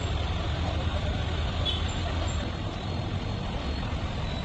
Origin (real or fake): fake